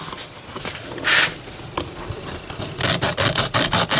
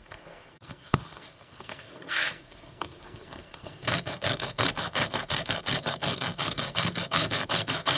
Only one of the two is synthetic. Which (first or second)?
second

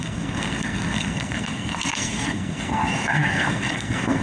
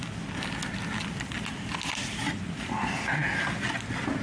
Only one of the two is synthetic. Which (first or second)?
first